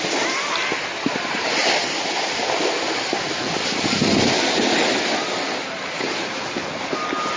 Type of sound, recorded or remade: recorded